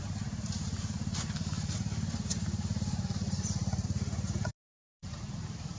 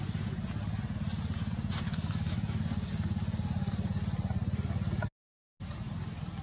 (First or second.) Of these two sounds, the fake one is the first